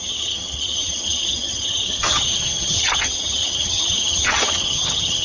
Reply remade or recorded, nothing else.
remade